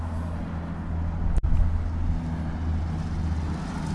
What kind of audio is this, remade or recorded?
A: recorded